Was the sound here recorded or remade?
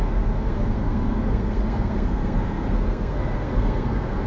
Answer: remade